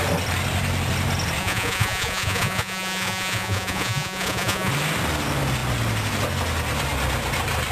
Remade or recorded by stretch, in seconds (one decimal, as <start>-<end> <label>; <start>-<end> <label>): 0.0-1.4 recorded; 1.4-4.7 remade; 4.7-7.7 recorded